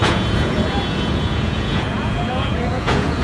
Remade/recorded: remade